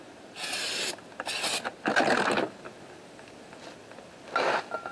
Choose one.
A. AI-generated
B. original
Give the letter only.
B